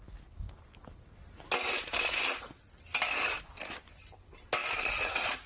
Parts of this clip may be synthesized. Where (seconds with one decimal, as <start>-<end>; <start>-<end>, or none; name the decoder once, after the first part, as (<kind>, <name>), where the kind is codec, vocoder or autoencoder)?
none